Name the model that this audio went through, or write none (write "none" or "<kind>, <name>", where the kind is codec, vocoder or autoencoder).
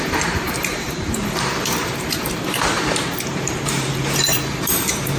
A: vocoder, BigVGAN v2